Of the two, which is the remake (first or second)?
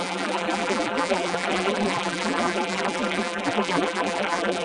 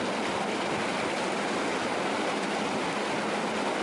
first